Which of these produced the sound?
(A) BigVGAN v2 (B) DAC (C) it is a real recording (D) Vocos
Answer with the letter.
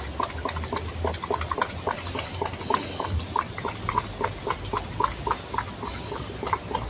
C